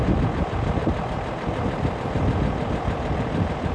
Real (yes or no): yes